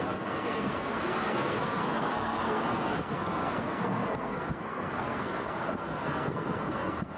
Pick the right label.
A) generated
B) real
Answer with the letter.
A